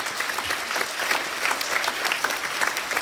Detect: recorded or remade recorded